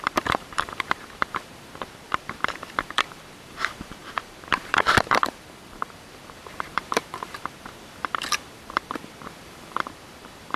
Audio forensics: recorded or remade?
remade